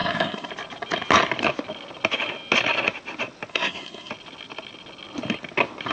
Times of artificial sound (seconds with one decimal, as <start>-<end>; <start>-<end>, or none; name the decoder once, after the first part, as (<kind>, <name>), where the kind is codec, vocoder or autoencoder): 0.0-0.5 (codec, SNAC); 3.5-4.1